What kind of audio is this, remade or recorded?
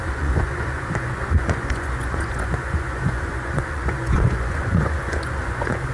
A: remade